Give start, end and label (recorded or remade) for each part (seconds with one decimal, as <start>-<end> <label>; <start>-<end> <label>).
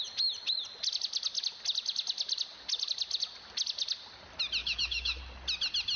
0.0-4.6 recorded; 4.6-5.2 remade; 5.2-6.0 recorded